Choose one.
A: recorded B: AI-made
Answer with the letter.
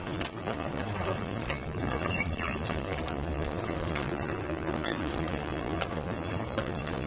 B